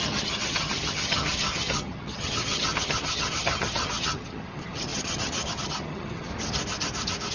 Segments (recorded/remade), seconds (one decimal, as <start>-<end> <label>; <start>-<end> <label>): 0.0-6.3 remade; 6.3-7.3 recorded